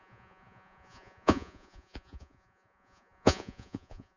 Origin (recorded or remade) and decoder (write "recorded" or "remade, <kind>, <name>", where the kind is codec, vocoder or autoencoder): remade, vocoder, Vocos